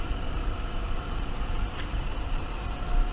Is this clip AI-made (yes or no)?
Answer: yes